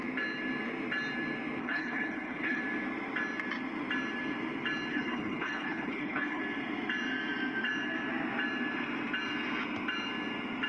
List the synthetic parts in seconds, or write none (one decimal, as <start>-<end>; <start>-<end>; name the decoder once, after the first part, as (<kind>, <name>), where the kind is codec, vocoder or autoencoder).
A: 1.6-2.6 (codec, HILCodec); 4.9-6.4